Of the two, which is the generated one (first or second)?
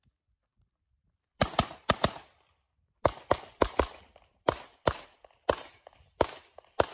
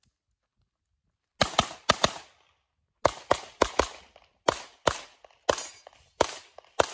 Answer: first